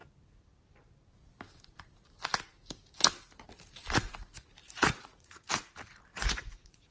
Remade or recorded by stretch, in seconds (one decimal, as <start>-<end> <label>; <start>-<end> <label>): 0.0-4.6 recorded; 4.6-5.5 remade; 5.5-6.1 recorded; 6.1-6.9 remade